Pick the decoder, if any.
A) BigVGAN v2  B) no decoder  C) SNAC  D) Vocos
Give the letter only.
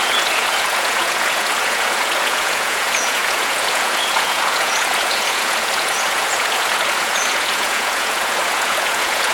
D